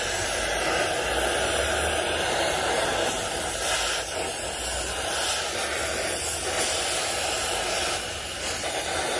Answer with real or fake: real